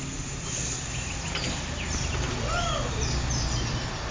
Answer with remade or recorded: recorded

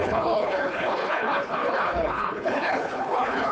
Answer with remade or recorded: remade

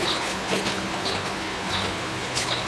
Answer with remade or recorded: remade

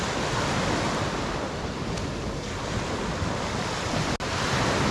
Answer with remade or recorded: recorded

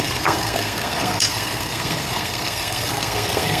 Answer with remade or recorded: remade